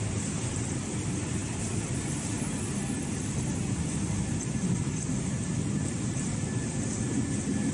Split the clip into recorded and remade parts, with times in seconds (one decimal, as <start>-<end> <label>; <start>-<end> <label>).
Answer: 0.0-7.7 recorded